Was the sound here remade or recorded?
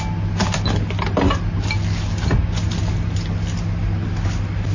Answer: recorded